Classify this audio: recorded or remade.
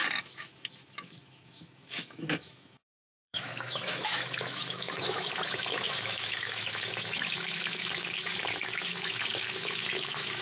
remade